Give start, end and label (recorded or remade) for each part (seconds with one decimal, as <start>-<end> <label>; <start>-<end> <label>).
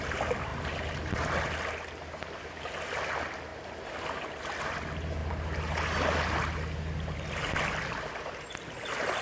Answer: 0.0-0.5 recorded; 0.5-2.8 remade; 2.8-5.2 recorded; 5.2-6.9 remade; 6.9-9.2 recorded